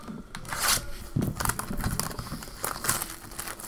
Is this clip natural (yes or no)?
yes